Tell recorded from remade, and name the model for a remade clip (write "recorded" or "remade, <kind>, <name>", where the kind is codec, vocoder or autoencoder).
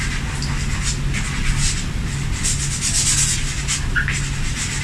recorded